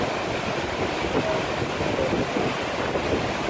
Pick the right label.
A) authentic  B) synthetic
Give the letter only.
A